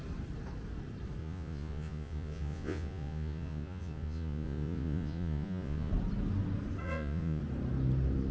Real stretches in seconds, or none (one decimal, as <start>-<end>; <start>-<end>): 0.0-1.2; 5.9-6.8; 7.4-8.3